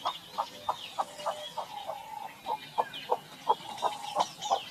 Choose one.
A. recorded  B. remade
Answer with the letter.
A